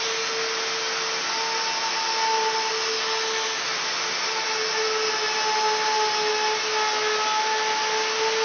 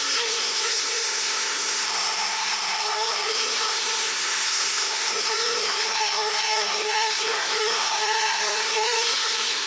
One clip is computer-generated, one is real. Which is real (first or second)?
first